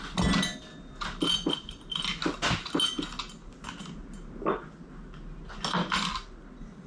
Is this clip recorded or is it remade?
recorded